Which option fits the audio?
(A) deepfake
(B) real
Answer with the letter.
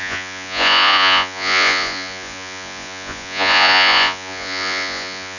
A